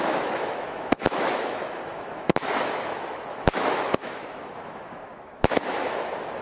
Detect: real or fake fake